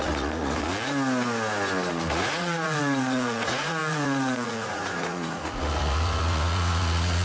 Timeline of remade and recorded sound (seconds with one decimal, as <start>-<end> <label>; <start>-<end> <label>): 0.0-0.6 remade; 0.6-1.9 recorded; 1.9-7.2 remade